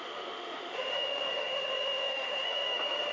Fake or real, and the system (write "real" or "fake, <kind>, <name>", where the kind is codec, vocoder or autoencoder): fake, autoencoder, DAC-VAE